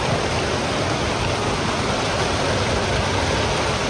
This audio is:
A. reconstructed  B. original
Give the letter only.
B